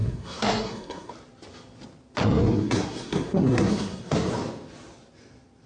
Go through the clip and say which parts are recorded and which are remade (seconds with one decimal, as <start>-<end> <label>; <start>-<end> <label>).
0.0-1.1 remade; 1.1-2.2 recorded; 2.2-4.3 remade; 4.3-5.7 recorded